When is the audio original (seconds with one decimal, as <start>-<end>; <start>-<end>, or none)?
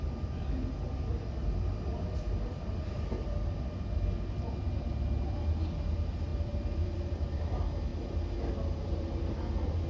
0.0-6.3; 7.2-9.9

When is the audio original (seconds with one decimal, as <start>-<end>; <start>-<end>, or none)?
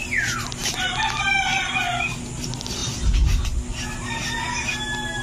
0.0-0.6; 1.6-2.8; 3.8-5.2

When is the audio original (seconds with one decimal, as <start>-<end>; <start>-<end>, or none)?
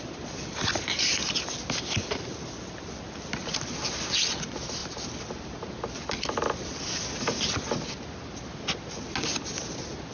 0.0-10.1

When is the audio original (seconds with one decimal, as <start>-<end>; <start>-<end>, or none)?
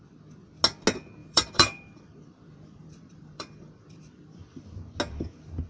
0.0-1.2; 4.6-5.7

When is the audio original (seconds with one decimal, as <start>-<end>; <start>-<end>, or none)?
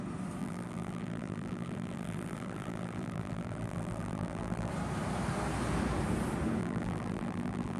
0.0-0.4; 4.7-6.6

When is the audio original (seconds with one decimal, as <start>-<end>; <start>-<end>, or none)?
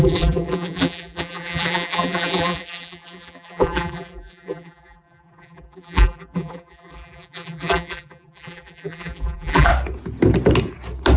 9.7-11.2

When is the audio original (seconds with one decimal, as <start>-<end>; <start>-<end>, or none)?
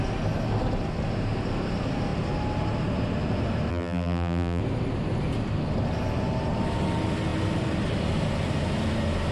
0.0-3.7; 4.6-9.3